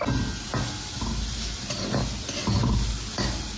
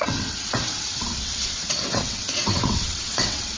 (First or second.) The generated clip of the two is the second